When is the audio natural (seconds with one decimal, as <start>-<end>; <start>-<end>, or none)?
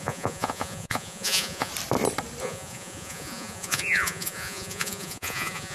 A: 1.7-2.4